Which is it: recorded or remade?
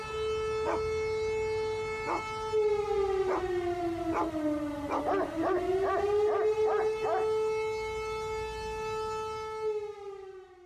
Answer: recorded